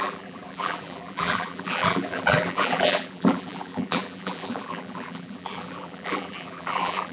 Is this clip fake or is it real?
fake